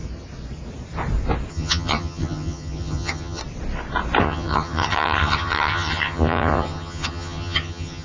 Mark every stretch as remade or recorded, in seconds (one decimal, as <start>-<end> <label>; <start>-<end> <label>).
0.0-1.5 recorded; 1.5-3.4 remade; 3.4-4.2 recorded; 4.2-8.0 remade